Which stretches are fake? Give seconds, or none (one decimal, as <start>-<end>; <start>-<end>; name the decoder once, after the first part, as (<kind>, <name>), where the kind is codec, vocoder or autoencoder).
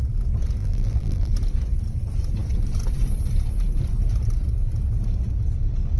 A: 0.6-1.3 (vocoder, BigVGAN v2)